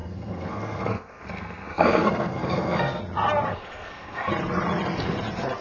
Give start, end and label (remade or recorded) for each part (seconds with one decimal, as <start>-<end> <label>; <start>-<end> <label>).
0.0-3.0 remade; 3.0-3.5 recorded; 3.5-4.3 remade; 4.3-5.6 recorded

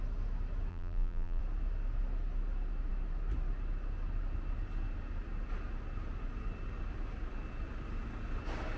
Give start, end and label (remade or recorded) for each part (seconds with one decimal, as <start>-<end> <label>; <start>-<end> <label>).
0.0-0.7 recorded; 0.7-1.4 remade; 1.4-8.8 recorded